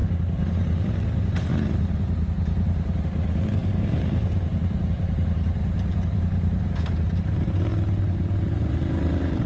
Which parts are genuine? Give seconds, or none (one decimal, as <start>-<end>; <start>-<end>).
7.7-8.4

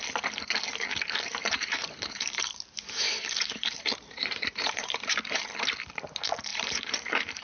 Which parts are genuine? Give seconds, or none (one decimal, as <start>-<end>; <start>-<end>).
0.0-1.3; 5.4-6.5

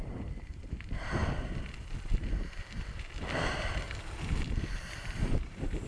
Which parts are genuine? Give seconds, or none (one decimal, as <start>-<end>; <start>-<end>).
1.2-4.7

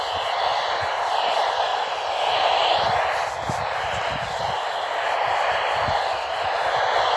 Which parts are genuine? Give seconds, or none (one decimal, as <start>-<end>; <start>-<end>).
0.0-7.2

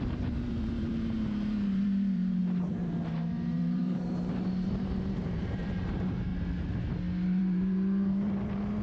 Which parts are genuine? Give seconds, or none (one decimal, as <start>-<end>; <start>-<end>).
2.4-3.1; 6.3-7.4

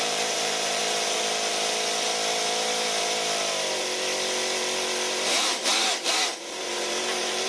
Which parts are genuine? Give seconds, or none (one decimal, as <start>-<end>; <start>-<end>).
0.8-5.3

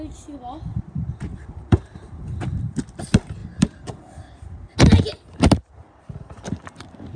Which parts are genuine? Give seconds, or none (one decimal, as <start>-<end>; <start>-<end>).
0.0-0.7; 2.6-7.2